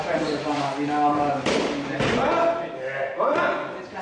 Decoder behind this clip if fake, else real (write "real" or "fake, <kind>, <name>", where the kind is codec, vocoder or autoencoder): real